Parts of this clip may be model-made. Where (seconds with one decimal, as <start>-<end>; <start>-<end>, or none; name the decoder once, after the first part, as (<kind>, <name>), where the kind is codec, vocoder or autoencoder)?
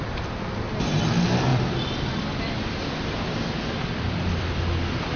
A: 1.5-4.6 (vocoder, BigVGAN v2)